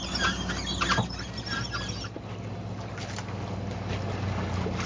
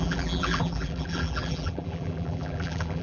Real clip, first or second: first